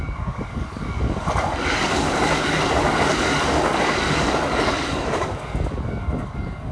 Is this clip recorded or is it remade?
remade